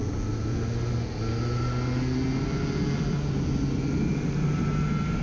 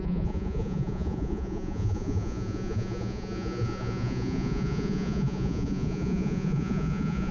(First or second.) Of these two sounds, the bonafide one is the first